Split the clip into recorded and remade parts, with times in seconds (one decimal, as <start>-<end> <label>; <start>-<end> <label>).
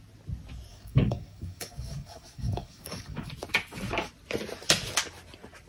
0.0-0.7 recorded; 0.7-3.3 remade; 3.3-5.7 recorded